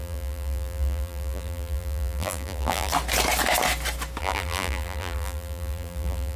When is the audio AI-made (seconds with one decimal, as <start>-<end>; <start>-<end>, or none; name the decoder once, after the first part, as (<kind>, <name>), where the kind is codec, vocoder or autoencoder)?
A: 0.0-2.9 (vocoder, BigVGAN v2); 4.2-6.4